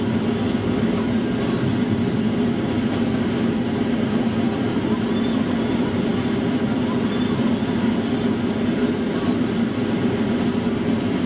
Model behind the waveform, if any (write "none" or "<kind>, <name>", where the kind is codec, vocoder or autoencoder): none